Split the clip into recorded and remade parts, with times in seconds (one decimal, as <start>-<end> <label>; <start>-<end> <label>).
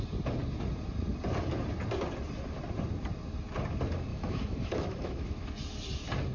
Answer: 0.0-4.1 recorded; 4.1-5.5 remade; 5.5-6.3 recorded